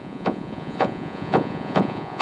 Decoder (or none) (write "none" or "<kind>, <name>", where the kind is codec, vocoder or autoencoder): vocoder, Vocos